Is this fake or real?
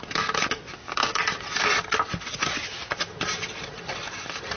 real